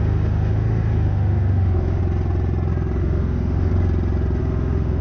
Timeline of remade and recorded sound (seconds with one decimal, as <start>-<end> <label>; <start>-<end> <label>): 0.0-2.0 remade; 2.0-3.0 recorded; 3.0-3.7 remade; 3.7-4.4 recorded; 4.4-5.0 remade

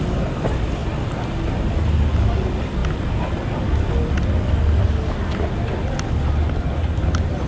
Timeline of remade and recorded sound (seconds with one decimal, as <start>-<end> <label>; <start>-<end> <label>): 0.0-7.5 recorded

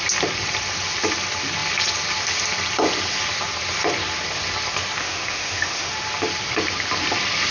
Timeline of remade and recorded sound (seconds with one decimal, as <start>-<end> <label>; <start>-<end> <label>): 0.0-5.0 recorded; 5.0-5.9 remade; 5.9-7.5 recorded

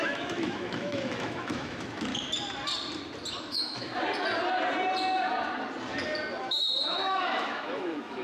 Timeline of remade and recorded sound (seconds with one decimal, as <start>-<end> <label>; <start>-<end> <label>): 0.0-2.1 remade; 2.1-3.4 recorded; 3.4-3.9 remade; 3.9-6.4 recorded; 6.4-8.2 remade

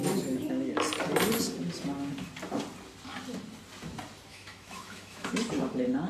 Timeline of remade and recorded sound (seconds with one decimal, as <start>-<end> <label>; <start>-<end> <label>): 0.0-4.3 recorded; 4.3-5.3 remade; 5.3-6.1 recorded

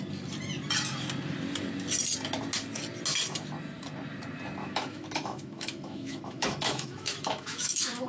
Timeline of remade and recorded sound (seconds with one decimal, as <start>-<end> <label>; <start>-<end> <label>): 0.0-4.6 recorded; 4.6-8.1 remade

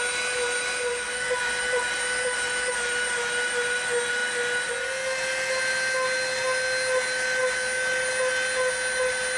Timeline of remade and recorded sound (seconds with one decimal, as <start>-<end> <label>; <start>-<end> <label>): 0.0-9.4 recorded